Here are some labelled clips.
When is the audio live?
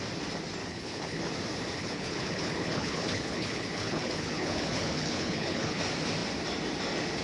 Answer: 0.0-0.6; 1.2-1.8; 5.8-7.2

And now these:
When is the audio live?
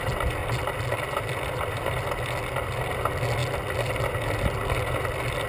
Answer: 0.0-0.4; 2.7-5.5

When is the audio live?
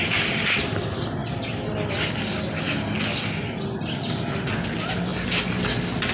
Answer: 0.0-6.1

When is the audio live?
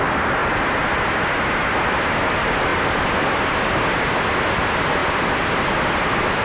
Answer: 0.0-5.0; 5.5-6.4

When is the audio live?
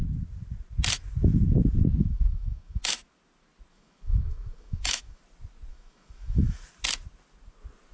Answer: 0.0-2.0; 2.9-3.7; 5.2-5.7; 6.6-7.9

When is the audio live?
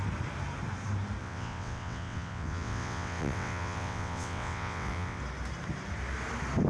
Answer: 0.0-1.2; 5.2-6.7